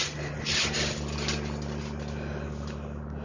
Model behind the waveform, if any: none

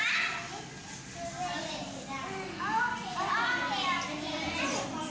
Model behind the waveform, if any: none